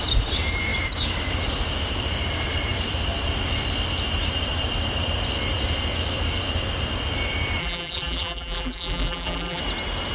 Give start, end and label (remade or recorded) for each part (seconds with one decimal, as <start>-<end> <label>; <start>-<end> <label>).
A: 0.0-7.6 recorded; 7.6-9.6 remade; 9.6-10.1 recorded

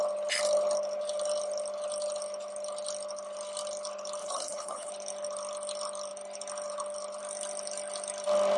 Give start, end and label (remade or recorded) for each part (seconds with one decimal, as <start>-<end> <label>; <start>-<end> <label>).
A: 0.0-4.2 recorded; 4.2-4.9 remade; 4.9-8.6 recorded

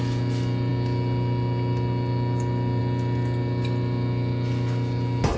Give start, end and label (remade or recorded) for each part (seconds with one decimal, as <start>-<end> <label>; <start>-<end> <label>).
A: 0.0-5.4 recorded

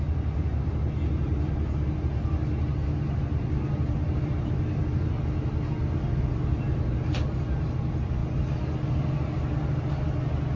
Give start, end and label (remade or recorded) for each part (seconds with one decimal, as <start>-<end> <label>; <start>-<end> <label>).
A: 0.0-10.6 recorded